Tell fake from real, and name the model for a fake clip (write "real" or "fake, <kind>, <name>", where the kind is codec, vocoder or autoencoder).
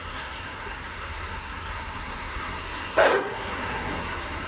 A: fake, codec, SNAC